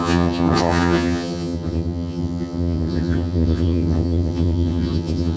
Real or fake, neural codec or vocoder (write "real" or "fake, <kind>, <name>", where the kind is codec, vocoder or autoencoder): fake, vocoder, HiFi-GAN